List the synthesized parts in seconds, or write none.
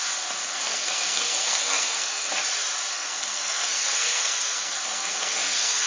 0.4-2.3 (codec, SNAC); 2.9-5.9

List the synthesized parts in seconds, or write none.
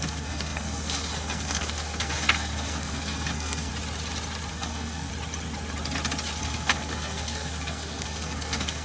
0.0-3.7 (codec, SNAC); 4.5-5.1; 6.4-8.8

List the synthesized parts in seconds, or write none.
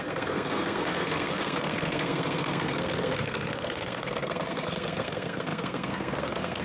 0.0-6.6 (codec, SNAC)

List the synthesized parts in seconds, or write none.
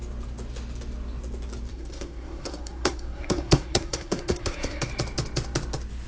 1.7-4.9 (codec, SNAC)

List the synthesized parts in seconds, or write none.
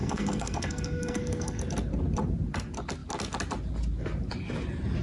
0.0-1.6 (codec, SNAC)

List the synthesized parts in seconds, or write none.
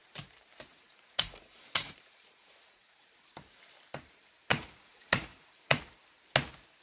0.7-3.1 (vocoder, Vocos); 4.5-5.8